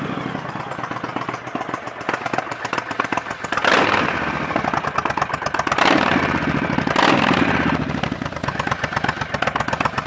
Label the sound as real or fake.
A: real